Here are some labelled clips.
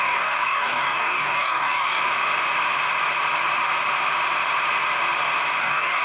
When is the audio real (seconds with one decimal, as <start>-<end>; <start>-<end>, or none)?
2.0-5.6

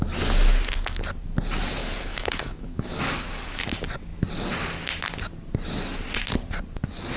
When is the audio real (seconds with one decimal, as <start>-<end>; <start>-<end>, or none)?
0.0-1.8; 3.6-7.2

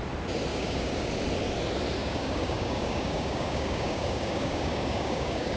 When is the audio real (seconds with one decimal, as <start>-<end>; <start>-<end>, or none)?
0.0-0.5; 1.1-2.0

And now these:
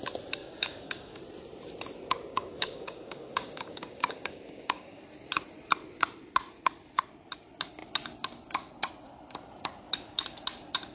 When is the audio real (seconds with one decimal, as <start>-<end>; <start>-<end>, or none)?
0.0-0.4; 1.2-2.3; 5.0-10.9

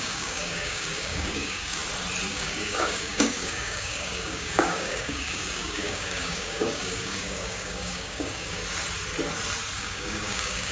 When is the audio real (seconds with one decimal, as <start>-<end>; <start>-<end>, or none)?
1.8-2.3; 8.6-9.8